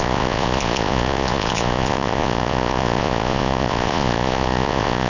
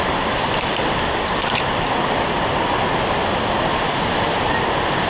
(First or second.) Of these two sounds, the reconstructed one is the first